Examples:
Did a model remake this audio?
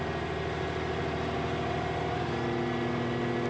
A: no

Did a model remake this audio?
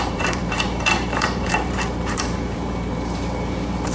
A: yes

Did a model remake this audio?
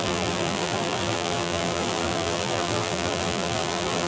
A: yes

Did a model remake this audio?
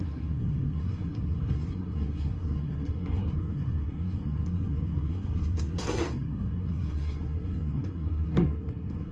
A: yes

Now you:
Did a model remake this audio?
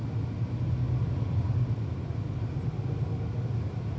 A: no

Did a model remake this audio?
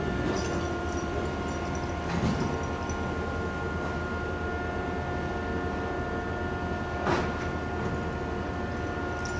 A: no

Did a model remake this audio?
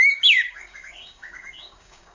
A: yes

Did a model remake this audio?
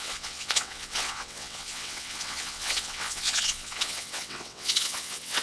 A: yes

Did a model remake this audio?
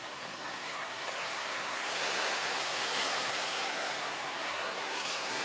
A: yes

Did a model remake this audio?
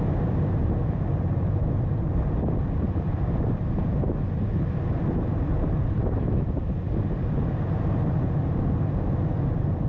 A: yes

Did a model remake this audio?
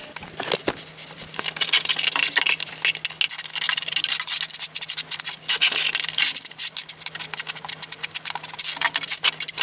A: no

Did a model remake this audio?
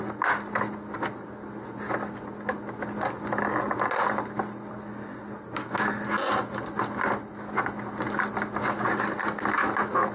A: no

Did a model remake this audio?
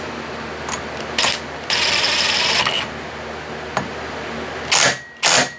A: no